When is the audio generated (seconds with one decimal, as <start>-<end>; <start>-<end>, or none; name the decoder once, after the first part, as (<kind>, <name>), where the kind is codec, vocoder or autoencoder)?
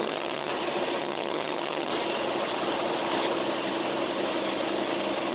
0.0-0.5 (vocoder, HiFi-GAN); 1.0-1.9